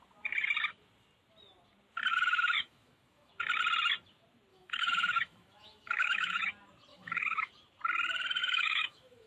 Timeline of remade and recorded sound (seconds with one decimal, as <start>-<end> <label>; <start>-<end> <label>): 0.0-2.1 recorded; 2.1-3.3 remade; 3.3-4.5 recorded; 4.5-6.5 remade; 6.5-6.9 recorded; 6.9-7.5 remade; 7.5-8.4 recorded; 8.4-9.3 remade